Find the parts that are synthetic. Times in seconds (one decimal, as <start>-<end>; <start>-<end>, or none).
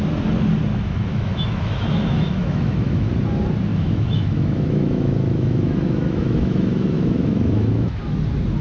0.7-3.1; 3.7-8.0